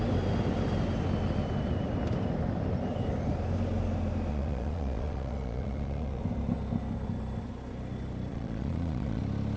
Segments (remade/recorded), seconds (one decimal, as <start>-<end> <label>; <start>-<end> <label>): 0.0-4.3 recorded; 4.3-6.2 remade; 6.2-8.3 recorded; 8.3-9.2 remade; 9.2-9.6 recorded